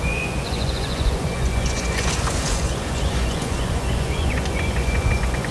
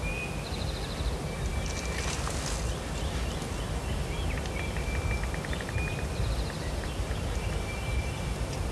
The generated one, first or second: first